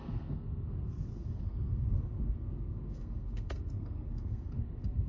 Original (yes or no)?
no